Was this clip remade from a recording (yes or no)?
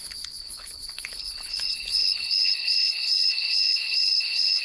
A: yes